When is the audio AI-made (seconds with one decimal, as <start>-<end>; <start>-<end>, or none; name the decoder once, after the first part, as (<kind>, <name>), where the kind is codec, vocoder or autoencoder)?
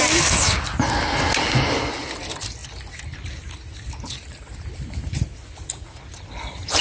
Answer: none